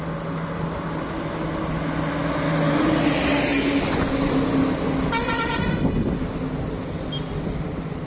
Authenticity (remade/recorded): recorded